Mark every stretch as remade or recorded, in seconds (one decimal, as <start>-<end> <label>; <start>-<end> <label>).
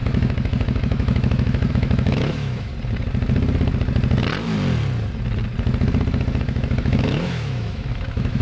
0.0-2.7 remade; 2.7-6.4 recorded; 6.4-8.4 remade